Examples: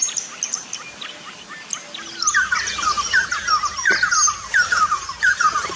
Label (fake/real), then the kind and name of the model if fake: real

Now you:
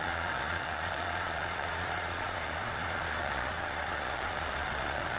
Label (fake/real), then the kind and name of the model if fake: fake, vocoder, Vocos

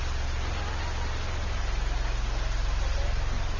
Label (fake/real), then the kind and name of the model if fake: real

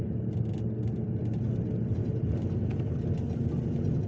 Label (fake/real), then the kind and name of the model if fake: real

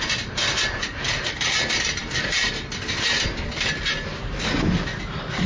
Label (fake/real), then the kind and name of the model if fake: real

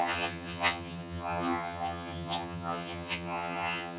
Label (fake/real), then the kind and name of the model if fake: fake, vocoder, HiFi-GAN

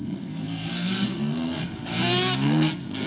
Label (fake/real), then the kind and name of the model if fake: fake, codec, SNAC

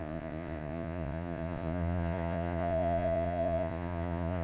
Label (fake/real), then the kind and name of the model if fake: fake, vocoder, Vocos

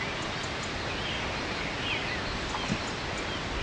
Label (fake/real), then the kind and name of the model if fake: real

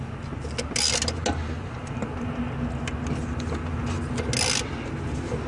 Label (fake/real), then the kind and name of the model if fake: real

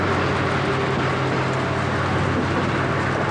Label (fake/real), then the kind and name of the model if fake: real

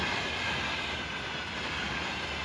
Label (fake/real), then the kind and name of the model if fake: real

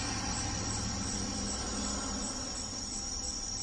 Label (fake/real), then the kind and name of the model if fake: real